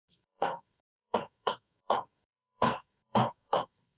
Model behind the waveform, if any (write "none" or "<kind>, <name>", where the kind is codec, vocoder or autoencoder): codec, SNAC